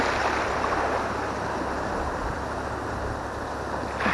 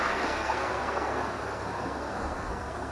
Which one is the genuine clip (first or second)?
first